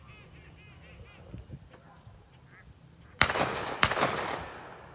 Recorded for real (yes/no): yes